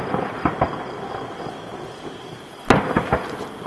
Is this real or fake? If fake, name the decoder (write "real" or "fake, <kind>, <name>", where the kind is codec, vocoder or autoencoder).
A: real